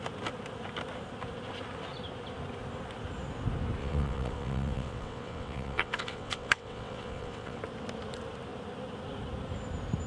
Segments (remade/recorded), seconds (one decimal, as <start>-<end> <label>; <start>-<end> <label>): 0.0-3.8 recorded; 3.8-7.6 remade; 7.6-10.1 recorded

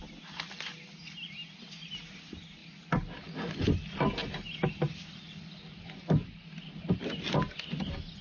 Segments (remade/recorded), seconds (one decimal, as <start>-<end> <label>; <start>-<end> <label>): 0.0-8.2 recorded

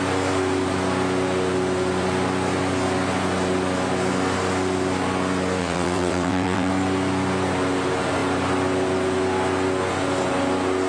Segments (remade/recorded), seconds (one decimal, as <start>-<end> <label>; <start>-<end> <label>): 0.0-5.6 recorded; 5.6-6.7 remade; 6.7-10.9 recorded

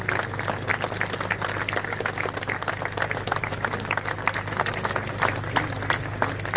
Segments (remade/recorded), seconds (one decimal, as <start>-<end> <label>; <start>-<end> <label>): 0.0-6.6 recorded